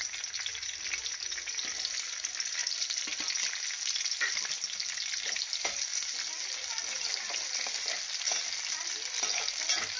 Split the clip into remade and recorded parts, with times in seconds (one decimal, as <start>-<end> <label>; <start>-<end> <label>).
0.0-10.0 recorded